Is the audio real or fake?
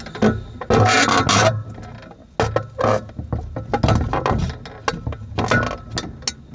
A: real